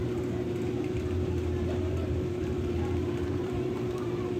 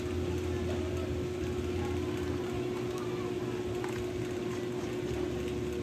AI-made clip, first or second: first